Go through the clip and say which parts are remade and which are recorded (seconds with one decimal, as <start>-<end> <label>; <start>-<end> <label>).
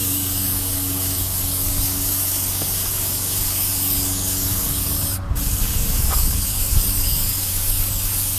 0.0-8.4 remade